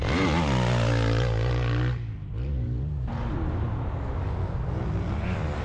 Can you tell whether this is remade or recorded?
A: recorded